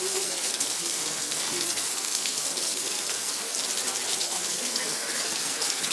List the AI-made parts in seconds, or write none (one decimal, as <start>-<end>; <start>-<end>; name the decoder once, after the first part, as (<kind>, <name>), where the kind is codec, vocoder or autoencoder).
0.0-3.5 (codec, SNAC); 4.2-5.9